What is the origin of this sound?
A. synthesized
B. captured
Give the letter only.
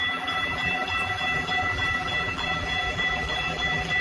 A